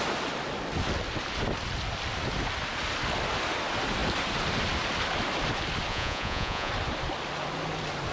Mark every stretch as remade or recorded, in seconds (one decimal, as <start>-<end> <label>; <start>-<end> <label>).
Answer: 0.0-5.9 recorded; 5.9-6.7 remade; 6.7-8.1 recorded